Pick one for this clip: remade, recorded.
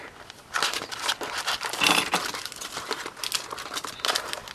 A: recorded